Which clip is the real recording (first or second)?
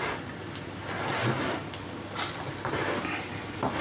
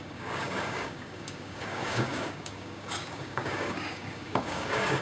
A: first